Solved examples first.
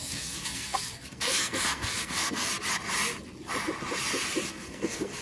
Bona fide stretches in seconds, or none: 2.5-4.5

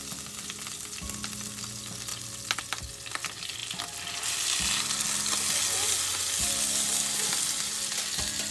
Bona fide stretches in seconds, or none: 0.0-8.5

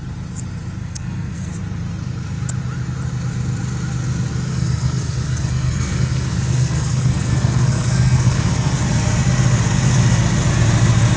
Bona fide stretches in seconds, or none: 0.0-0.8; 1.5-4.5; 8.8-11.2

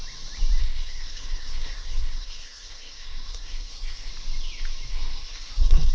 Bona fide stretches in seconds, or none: 0.0-0.6; 4.1-4.9

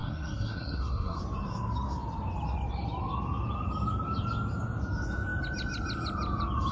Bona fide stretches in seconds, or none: 1.2-6.7